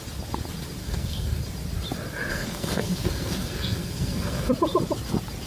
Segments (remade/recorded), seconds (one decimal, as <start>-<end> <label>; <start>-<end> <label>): 0.0-0.8 recorded; 0.8-1.4 remade; 1.4-2.3 recorded; 2.3-4.5 remade; 4.5-5.5 recorded